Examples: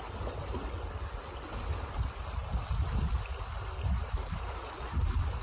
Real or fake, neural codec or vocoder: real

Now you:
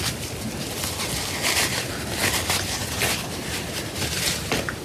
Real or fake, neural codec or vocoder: real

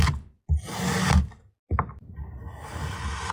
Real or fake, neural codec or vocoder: real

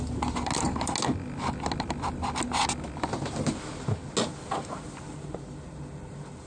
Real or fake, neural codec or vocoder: real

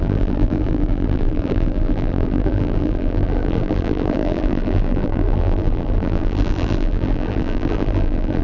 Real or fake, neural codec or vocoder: fake, vocoder, BigVGAN v2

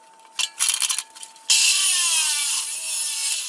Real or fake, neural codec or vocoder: real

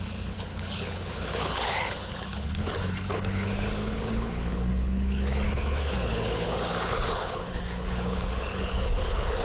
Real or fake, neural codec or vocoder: fake, codec, HILCodec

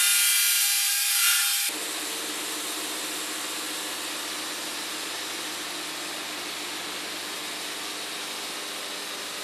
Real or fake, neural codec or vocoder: real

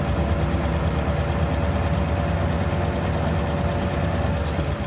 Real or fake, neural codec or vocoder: real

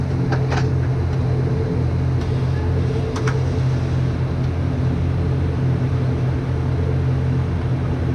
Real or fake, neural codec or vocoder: real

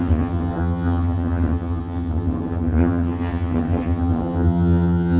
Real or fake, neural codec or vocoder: fake, vocoder, HiFi-GAN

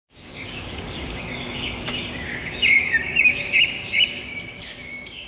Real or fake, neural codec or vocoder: fake, codec, DAC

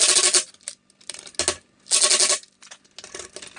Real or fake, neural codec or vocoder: real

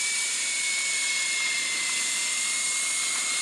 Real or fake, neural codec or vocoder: fake, vocoder, BigVGAN v2